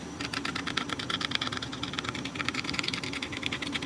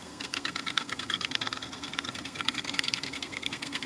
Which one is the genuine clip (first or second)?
first